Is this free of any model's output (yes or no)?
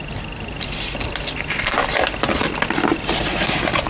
yes